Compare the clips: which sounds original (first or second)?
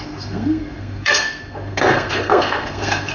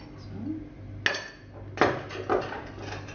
second